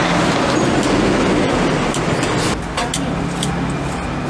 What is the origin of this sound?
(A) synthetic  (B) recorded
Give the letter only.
B